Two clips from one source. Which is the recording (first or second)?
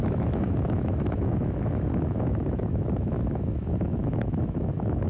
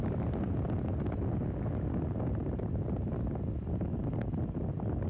second